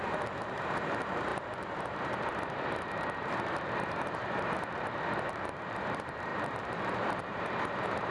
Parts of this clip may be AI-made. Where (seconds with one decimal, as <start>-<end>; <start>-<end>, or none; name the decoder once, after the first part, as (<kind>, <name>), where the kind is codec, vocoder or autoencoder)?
0.0-8.1 (vocoder, BigVGAN v2)